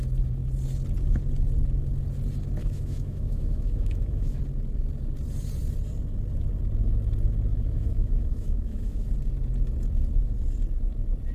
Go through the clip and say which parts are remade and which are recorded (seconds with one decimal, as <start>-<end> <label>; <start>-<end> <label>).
0.0-2.6 recorded; 2.6-4.4 remade; 4.4-7.5 recorded; 7.5-9.1 remade; 9.1-11.3 recorded

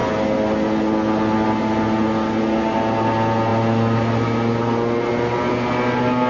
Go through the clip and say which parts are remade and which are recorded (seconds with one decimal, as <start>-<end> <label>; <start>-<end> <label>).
0.0-6.3 recorded

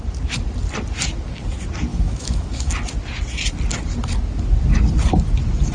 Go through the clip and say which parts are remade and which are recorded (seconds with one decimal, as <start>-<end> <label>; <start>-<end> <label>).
0.0-1.9 recorded; 1.9-2.7 remade; 2.7-5.7 recorded

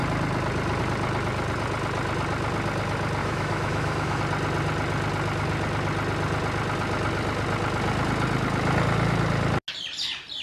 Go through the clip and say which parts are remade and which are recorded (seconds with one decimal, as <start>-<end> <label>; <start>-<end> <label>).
0.0-3.2 recorded; 3.2-4.2 remade; 4.2-10.4 recorded

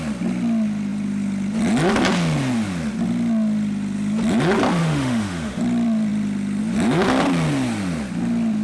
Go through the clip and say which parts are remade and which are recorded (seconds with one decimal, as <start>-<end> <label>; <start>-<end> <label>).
0.0-4.8 recorded; 4.8-5.6 remade; 5.6-8.6 recorded